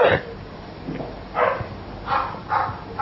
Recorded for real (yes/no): yes